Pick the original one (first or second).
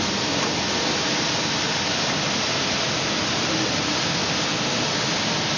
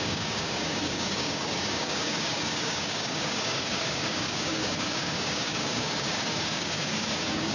first